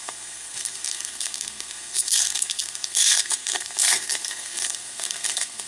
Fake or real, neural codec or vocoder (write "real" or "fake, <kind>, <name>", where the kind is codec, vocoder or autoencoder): fake, codec, SNAC